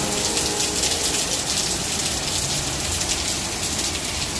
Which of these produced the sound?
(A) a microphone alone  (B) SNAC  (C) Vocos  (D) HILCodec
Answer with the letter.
A